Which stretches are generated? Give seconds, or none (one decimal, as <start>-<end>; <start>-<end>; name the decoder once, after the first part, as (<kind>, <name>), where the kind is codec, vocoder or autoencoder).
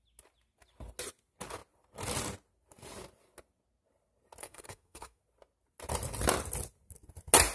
4.4-5.2 (codec, SNAC)